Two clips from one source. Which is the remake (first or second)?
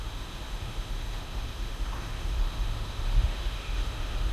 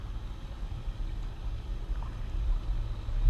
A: first